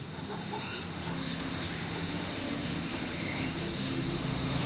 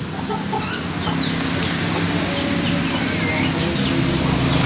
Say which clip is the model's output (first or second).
first